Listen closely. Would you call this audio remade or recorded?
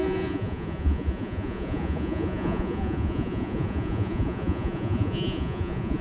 remade